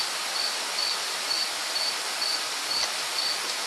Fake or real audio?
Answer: real